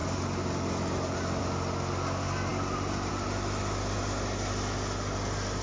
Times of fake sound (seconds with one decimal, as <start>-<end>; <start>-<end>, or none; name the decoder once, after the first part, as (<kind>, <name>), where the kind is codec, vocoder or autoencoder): none